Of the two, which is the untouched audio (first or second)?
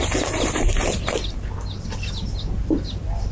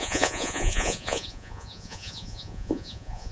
first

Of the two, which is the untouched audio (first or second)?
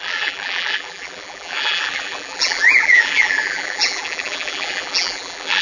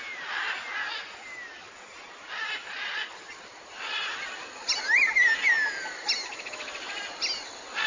second